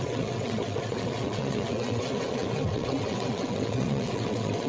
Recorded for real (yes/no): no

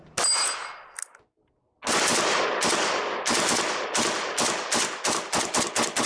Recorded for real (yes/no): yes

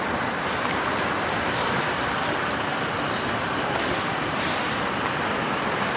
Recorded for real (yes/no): yes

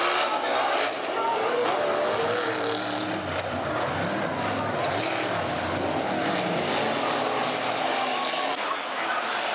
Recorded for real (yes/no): yes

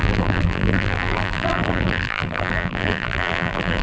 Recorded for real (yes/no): no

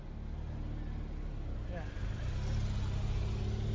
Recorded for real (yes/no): yes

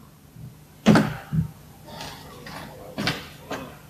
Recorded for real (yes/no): yes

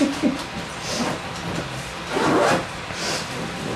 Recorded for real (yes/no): yes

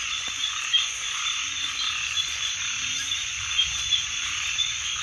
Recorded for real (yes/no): no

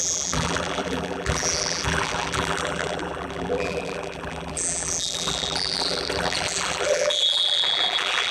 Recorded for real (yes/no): no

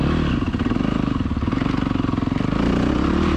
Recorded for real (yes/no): yes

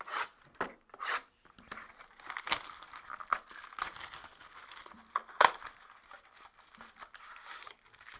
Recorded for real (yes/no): yes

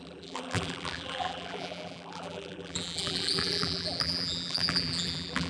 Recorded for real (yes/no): no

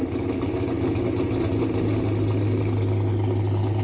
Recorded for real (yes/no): yes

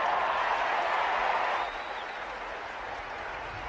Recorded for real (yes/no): no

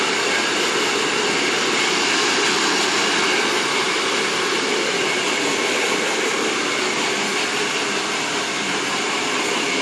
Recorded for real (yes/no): yes